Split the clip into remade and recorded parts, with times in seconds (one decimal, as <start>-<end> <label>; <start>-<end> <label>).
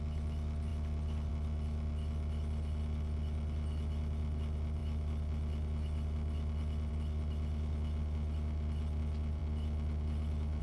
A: 0.0-10.6 recorded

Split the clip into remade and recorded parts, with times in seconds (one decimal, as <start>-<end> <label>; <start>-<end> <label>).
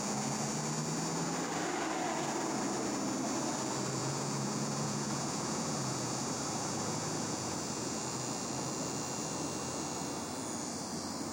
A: 0.0-4.0 recorded; 4.0-8.0 remade; 8.0-11.3 recorded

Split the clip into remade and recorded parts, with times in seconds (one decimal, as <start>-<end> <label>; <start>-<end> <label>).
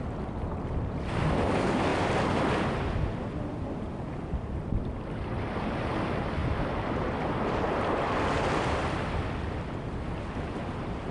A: 0.0-1.9 recorded; 1.9-3.3 remade; 3.3-11.1 recorded